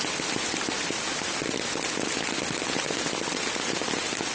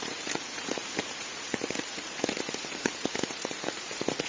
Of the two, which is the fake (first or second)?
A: second